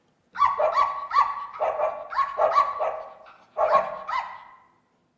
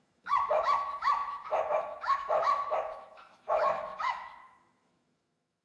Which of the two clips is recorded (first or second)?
first